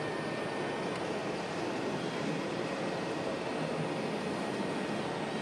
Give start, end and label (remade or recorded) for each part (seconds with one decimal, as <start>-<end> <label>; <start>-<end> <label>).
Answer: 0.0-1.2 recorded; 1.2-3.5 remade; 3.5-5.4 recorded